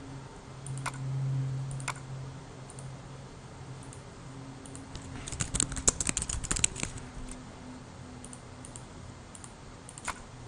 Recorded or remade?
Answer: recorded